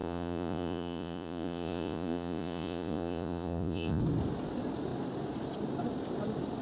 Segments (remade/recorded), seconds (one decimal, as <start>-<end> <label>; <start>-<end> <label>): 0.0-4.0 remade; 4.0-6.6 recorded